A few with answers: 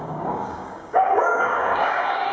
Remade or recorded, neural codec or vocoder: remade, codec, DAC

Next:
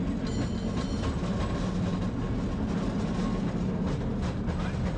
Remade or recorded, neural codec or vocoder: recorded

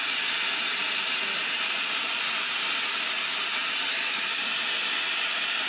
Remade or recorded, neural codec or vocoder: recorded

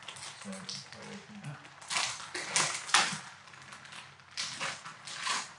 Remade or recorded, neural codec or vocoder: recorded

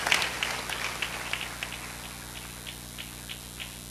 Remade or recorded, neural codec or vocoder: recorded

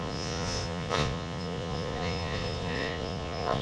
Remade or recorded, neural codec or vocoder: remade, vocoder, Vocos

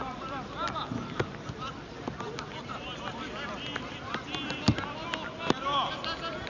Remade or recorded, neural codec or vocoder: recorded